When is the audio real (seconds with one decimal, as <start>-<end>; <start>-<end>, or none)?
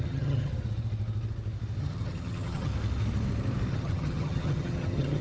0.5-1.8; 2.7-3.7